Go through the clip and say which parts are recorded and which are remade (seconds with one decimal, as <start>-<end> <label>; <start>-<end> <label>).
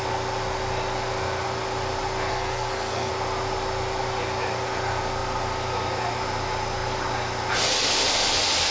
0.0-2.3 recorded; 2.3-3.1 remade; 3.1-8.7 recorded